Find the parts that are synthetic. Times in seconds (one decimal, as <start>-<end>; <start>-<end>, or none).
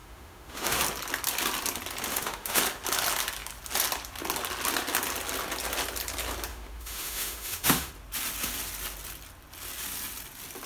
0.0-0.8; 2.1-2.6; 6.5-7.9